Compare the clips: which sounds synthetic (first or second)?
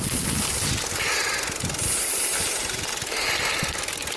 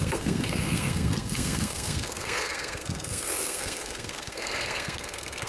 second